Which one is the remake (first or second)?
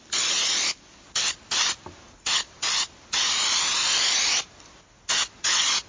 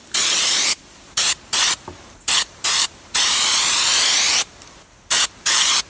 second